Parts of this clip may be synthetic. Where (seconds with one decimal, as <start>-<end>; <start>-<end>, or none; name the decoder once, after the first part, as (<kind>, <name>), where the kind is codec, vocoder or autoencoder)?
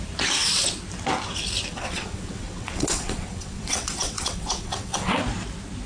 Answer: 1.7-5.2 (vocoder, WaveNeXt)